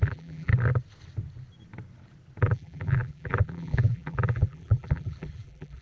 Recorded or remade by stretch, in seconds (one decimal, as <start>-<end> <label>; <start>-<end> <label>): 0.0-0.5 remade; 0.5-2.4 recorded; 2.4-5.8 remade

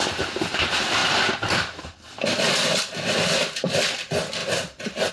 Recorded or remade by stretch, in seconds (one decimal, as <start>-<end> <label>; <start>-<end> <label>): 0.0-1.0 remade; 1.0-1.8 recorded; 1.8-4.4 remade; 4.4-5.1 recorded

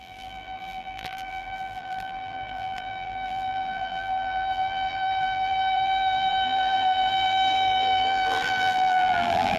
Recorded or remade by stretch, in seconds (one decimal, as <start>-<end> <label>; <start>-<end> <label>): 0.0-9.6 remade

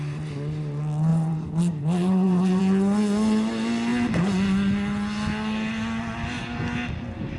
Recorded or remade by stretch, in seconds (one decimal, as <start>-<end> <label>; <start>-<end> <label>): 0.0-1.1 recorded; 1.1-2.6 remade; 2.6-7.4 recorded

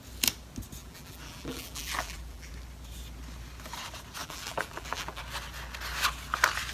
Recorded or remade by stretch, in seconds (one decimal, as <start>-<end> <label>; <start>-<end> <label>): 0.0-0.8 recorded; 0.8-2.5 remade; 2.5-4.2 recorded; 4.2-5.2 remade; 5.2-6.7 recorded

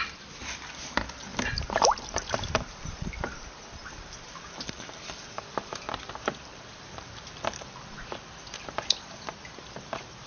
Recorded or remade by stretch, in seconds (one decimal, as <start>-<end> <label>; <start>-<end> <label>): 0.0-1.3 recorded; 1.3-6.1 remade; 6.1-6.5 recorded; 6.5-9.2 remade; 9.2-10.3 recorded